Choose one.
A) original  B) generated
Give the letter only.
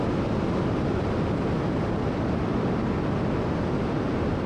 A